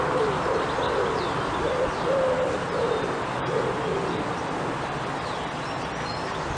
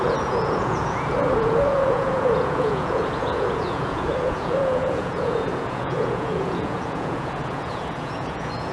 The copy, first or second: second